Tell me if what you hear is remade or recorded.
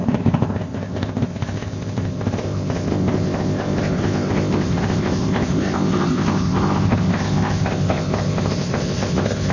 remade